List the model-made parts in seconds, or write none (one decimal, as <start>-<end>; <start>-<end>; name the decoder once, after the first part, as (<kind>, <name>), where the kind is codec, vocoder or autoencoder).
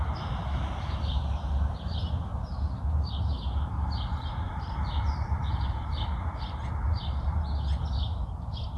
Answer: 0.0-2.3 (vocoder, BigVGAN v2); 2.9-8.8